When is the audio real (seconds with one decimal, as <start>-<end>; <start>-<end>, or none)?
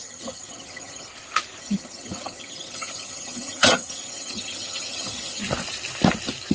1.1-1.6; 5.4-6.5